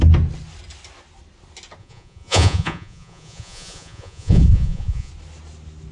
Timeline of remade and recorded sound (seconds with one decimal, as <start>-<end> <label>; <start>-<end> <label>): 0.0-1.8 recorded; 1.8-5.1 remade; 5.1-5.9 recorded